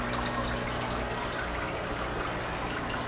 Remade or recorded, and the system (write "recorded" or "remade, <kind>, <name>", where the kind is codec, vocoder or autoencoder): recorded